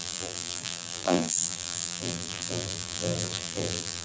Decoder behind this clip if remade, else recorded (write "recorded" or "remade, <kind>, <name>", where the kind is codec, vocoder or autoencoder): remade, vocoder, BigVGAN v2